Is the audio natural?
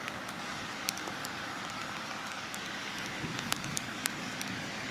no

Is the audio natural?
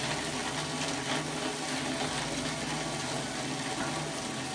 yes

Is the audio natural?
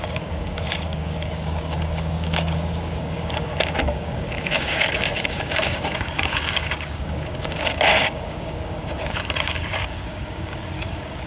no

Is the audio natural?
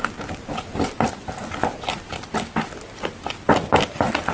yes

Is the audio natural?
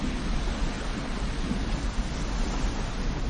yes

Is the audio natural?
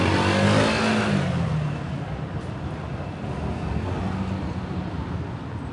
yes